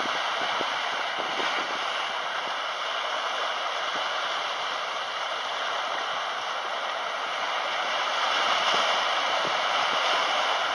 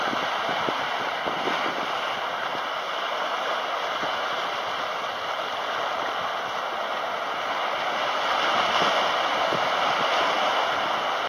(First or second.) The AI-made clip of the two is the first